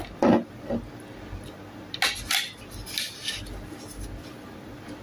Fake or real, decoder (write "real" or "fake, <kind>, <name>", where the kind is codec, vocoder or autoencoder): real